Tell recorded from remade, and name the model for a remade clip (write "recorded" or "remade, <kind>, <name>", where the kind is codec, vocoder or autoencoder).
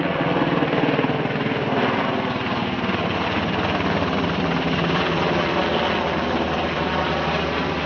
recorded